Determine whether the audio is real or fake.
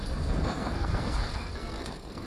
fake